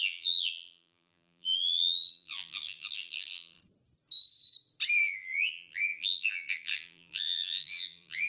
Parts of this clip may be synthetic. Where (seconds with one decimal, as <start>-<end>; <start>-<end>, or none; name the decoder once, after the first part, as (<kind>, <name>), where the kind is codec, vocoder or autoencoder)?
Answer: 0.0-3.6 (vocoder, BigVGAN v2); 4.9-8.3